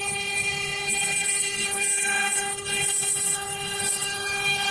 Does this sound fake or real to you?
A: fake